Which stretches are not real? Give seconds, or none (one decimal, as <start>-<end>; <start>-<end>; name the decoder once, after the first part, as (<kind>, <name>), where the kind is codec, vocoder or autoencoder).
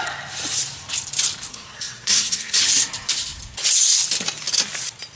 1.5-2.6 (codec, SNAC)